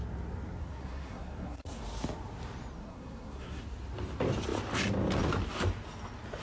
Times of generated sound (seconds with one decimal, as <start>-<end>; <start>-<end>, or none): 0.6-1.8; 2.8-3.6